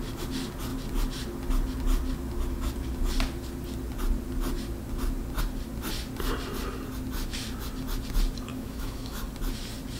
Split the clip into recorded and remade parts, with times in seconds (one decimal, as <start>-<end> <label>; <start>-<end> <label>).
0.0-8.5 recorded; 8.5-9.2 remade; 9.2-10.0 recorded